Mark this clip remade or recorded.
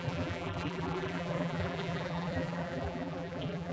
remade